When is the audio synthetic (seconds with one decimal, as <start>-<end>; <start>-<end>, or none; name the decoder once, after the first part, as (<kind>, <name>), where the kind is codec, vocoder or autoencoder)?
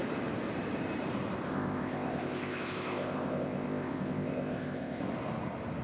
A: 1.5-5.0 (codec, ZipCodec)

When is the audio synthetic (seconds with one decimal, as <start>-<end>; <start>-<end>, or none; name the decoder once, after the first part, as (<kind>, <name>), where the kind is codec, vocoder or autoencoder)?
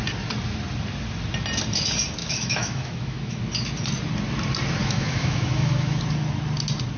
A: 2.2-3.4 (autoencoder, DAC-VAE); 4.8-6.0